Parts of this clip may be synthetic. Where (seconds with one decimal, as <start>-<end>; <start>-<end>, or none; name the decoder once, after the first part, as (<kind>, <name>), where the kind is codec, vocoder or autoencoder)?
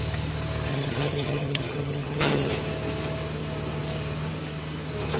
0.7-2.5 (vocoder, HiFi-GAN)